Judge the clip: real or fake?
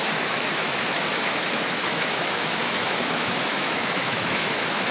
fake